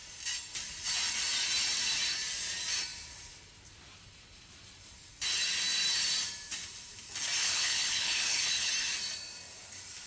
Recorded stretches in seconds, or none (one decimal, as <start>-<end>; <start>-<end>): 0.0-7.4; 8.7-10.1